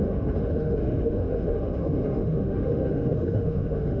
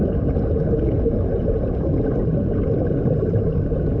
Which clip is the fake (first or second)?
first